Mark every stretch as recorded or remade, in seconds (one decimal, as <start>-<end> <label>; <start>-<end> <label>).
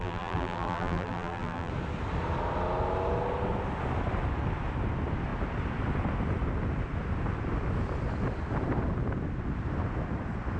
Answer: 0.0-1.7 remade; 1.7-10.6 recorded